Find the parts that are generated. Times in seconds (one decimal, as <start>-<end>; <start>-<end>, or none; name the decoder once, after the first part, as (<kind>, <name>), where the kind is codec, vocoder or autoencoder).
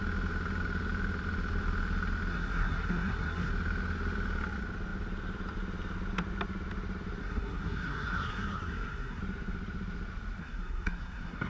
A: 2.3-3.5 (codec, SNAC); 7.2-9.2; 10.4-11.5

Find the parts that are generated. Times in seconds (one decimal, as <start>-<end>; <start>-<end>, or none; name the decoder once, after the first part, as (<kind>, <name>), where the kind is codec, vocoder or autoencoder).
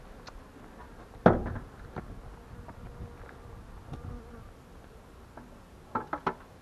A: none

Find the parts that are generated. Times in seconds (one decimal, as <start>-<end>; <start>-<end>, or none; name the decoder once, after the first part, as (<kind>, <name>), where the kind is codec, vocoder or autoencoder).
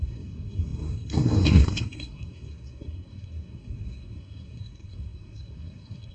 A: 0.0-6.1 (codec, SNAC)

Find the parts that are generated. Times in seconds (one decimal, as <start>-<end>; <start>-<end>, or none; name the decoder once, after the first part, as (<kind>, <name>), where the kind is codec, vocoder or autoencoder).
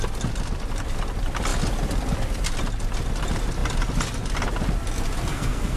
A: 5.3-5.8 (codec, SNAC)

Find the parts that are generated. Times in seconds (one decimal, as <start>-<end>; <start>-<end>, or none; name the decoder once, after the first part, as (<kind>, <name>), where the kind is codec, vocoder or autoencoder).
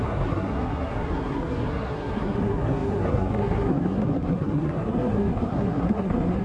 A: 0.0-6.4 (codec, SNAC)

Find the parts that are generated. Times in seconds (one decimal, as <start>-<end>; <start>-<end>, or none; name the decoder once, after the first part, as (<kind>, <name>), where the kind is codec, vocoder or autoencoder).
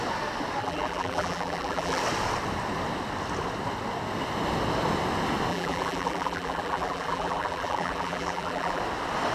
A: 0.6-2.0 (vocoder, BigVGAN v2); 5.5-8.8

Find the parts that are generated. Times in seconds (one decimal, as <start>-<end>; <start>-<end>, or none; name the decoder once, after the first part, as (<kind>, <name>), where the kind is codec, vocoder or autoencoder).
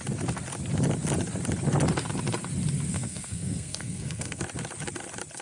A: 2.9-4.4 (codec, SNAC)